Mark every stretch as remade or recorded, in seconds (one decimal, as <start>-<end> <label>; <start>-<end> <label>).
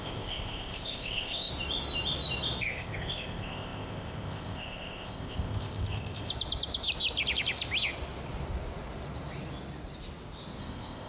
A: 0.0-1.5 remade; 1.5-2.6 recorded; 2.6-6.3 remade; 6.3-10.6 recorded; 10.6-11.1 remade